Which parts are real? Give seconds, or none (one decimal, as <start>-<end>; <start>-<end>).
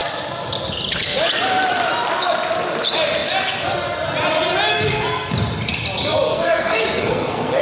0.0-4.7; 5.3-6.3